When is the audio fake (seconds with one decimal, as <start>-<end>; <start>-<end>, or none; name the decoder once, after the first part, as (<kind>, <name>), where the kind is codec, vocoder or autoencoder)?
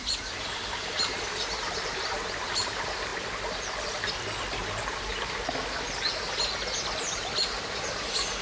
0.0-3.1 (vocoder, BigVGAN v2); 7.7-8.4